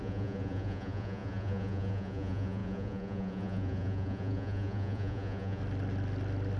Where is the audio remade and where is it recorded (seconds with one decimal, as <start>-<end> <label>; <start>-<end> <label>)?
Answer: 0.0-5.6 remade; 5.6-6.6 recorded